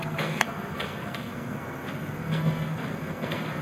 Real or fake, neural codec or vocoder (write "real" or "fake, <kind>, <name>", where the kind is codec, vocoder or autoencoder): fake, codec, SNAC